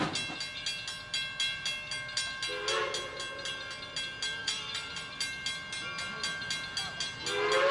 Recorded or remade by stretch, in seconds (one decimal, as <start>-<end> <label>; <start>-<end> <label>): 0.0-4.4 recorded; 4.4-5.2 remade; 5.2-7.7 recorded

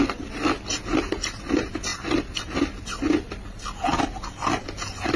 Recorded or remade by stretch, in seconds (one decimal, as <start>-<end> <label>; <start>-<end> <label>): 0.0-5.2 recorded

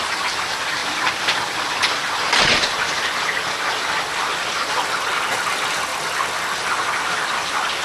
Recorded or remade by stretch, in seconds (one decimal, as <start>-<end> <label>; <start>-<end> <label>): 0.0-0.8 recorded; 0.8-3.5 remade; 3.5-7.8 recorded

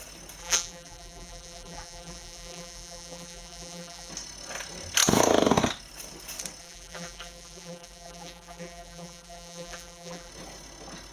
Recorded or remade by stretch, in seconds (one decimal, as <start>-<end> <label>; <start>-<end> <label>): 0.0-0.4 recorded; 0.4-4.1 remade; 4.1-6.6 recorded; 6.6-10.3 remade; 10.3-11.1 recorded

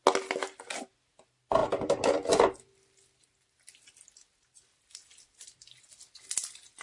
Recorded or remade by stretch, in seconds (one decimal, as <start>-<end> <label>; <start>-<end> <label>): 0.0-6.8 recorded

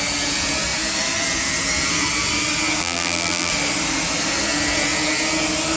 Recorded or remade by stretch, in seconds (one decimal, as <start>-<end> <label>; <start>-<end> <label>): 0.0-2.8 recorded; 2.8-3.5 remade; 3.5-5.8 recorded